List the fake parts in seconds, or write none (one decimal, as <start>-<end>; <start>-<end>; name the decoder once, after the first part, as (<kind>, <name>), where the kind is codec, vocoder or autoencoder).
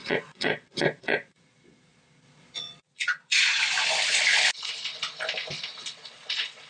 0.0-3.6 (vocoder, Vocos); 5.7-6.7